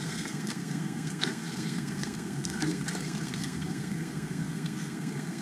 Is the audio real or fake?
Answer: fake